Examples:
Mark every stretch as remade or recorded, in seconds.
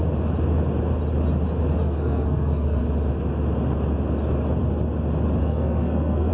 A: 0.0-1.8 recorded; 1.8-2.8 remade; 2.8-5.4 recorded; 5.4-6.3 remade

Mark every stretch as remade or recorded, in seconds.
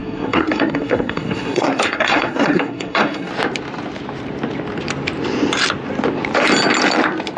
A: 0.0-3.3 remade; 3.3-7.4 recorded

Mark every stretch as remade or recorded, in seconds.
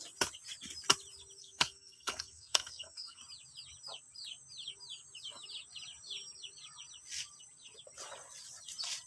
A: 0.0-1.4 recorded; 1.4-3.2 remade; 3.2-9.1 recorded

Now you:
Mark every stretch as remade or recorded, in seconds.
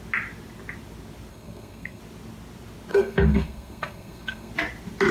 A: 0.0-1.3 recorded; 1.3-2.0 remade; 2.0-2.9 recorded; 2.9-4.5 remade; 4.5-5.1 recorded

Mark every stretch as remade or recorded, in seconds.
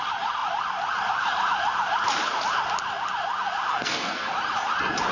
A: 0.0-3.7 recorded; 3.7-4.3 remade; 4.3-5.1 recorded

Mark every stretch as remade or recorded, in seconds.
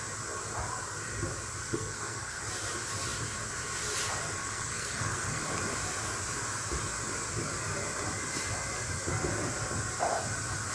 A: 0.0-1.6 recorded; 1.6-2.4 remade; 2.4-4.4 recorded; 4.4-5.4 remade; 5.4-10.7 recorded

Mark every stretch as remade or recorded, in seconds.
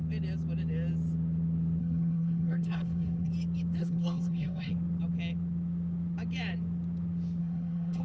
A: 0.0-1.8 recorded; 1.8-3.3 remade; 3.3-3.8 recorded; 3.8-4.7 remade; 4.7-7.4 recorded; 7.4-8.0 remade